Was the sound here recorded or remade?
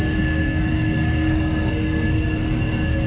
remade